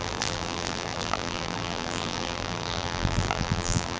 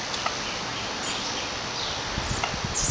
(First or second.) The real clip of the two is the second